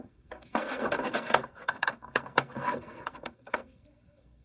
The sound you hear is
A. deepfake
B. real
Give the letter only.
A